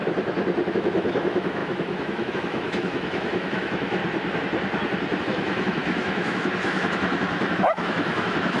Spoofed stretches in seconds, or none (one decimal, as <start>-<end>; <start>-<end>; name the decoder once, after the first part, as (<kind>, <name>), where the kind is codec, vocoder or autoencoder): 0.7-4.0 (autoencoder, DAC-VAE); 5.2-8.6